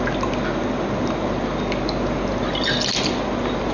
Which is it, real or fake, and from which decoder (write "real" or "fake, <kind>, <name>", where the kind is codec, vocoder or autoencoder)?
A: real